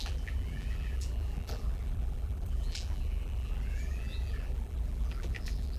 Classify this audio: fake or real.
fake